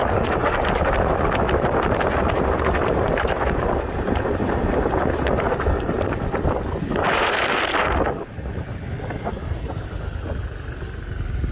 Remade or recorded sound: recorded